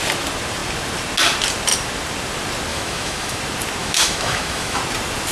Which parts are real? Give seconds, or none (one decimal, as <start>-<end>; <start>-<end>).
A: 0.0-2.7; 3.4-3.8; 4.8-5.3